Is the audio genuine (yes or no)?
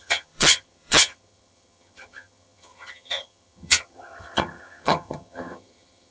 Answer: no